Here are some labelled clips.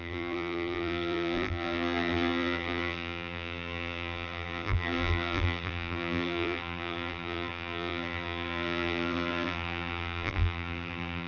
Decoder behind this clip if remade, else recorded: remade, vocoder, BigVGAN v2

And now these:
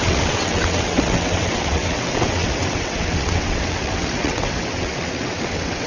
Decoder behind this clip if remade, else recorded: remade, vocoder, WaveNeXt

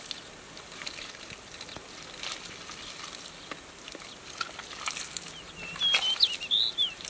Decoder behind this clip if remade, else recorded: recorded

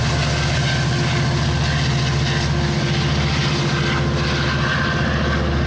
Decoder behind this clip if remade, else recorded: recorded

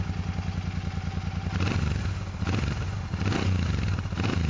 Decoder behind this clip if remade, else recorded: recorded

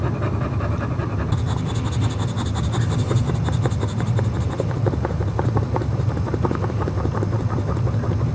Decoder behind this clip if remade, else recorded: recorded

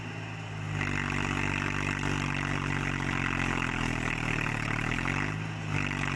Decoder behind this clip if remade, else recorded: recorded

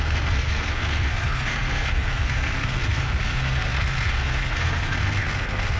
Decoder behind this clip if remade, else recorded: remade, codec, SNAC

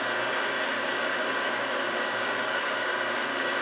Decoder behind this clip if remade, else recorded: remade, codec, DAC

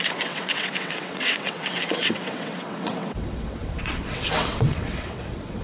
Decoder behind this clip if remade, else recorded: remade, vocoder, WaveNeXt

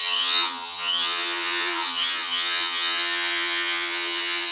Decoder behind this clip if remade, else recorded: remade, vocoder, HiFi-GAN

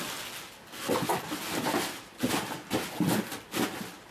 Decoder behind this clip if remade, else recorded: recorded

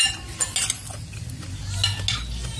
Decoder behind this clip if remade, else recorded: recorded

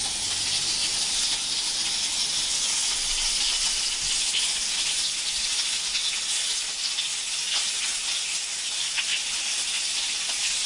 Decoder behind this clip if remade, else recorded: recorded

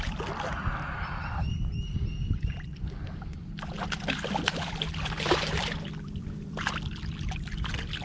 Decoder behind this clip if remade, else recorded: remade, vocoder, BigVGAN v2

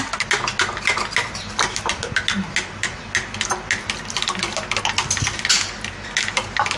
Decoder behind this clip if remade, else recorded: recorded